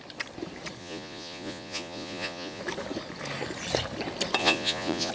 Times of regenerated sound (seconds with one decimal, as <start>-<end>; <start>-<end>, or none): 0.8-2.6; 4.4-5.1